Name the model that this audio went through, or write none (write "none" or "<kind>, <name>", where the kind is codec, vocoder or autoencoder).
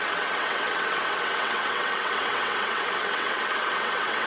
vocoder, WaveNeXt